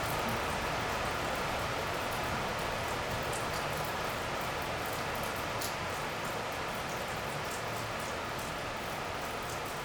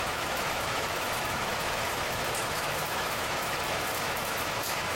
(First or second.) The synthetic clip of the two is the second